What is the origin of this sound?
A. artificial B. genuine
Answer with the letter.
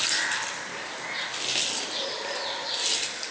B